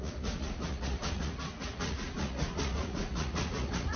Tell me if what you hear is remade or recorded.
remade